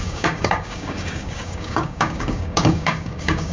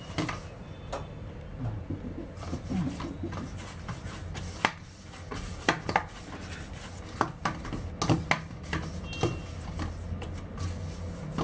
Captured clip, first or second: second